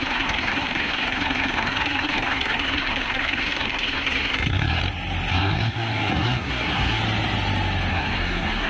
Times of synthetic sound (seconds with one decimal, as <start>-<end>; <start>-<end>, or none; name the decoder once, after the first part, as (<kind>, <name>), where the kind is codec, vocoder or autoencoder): 0.0-4.8 (codec, SNAC); 5.3-7.0; 7.9-8.7